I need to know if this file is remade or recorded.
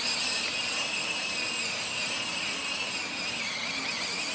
remade